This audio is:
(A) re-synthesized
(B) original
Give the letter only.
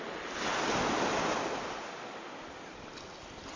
B